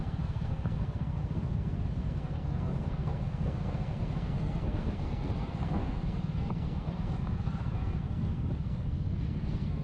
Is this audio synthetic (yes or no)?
yes